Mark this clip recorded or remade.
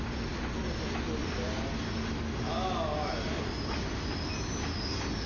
recorded